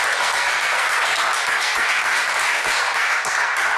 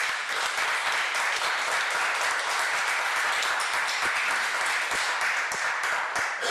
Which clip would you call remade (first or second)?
first